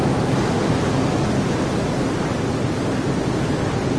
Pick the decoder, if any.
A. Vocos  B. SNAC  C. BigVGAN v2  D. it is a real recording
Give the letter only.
D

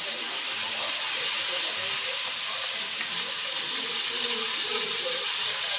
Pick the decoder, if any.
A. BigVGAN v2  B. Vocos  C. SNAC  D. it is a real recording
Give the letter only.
D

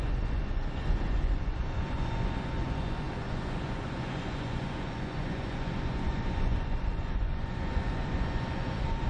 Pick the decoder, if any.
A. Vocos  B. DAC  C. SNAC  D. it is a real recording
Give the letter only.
A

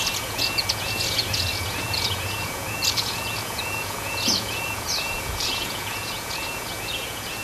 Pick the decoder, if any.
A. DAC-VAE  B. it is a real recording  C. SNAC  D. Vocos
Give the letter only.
D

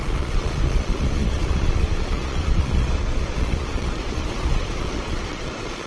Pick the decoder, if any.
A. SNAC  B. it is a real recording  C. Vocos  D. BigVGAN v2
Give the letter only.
C